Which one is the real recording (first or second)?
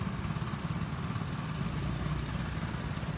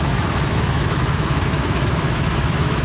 first